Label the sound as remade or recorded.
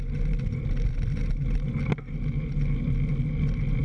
recorded